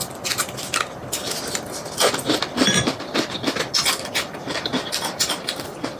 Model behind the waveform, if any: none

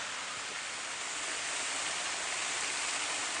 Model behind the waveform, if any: none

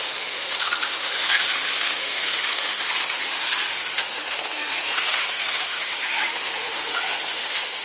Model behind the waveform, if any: autoencoder, DAC-VAE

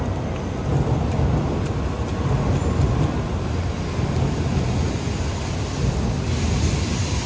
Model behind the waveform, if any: none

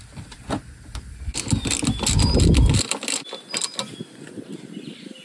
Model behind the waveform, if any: none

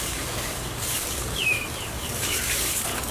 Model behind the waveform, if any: codec, DAC